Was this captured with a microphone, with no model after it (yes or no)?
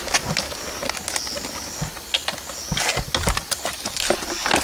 yes